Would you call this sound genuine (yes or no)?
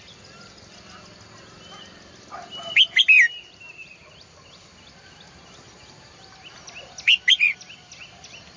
yes